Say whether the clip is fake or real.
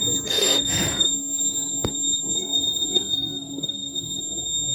fake